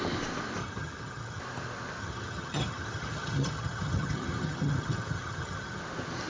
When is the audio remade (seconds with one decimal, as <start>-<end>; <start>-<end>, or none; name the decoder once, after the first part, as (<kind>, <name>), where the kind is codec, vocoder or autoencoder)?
0.6-1.4 (vocoder, HiFi-GAN); 2.0-5.8